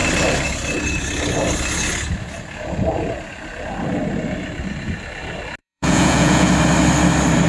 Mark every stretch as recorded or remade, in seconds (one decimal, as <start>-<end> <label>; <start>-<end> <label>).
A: 0.0-5.6 recorded; 5.6-6.5 remade; 6.5-7.5 recorded